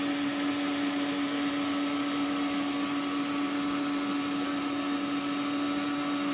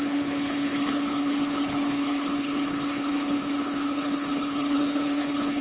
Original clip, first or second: first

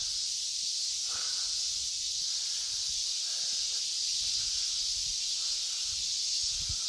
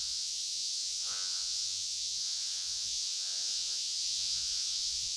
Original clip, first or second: first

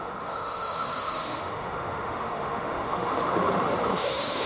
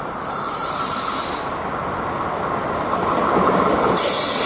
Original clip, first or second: second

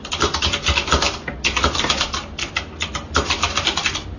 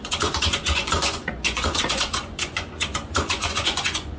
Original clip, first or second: first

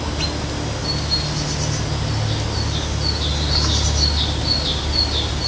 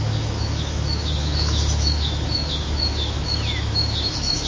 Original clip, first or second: first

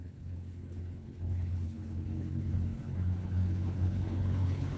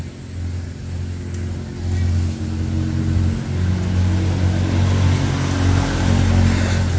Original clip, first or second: second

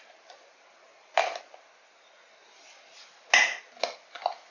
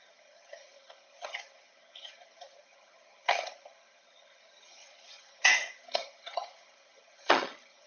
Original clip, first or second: first